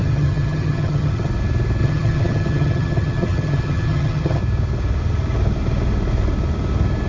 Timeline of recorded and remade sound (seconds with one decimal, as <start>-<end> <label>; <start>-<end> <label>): 0.0-1.3 remade; 1.3-1.8 recorded; 1.8-4.4 remade; 4.4-7.1 recorded